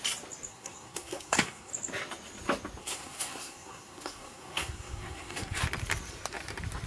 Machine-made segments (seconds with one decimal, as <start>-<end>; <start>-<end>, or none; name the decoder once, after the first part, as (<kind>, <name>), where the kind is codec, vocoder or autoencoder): 0.5-1.7 (codec, SNAC); 2.8-5.6